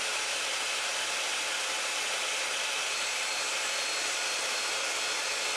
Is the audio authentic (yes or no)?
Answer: yes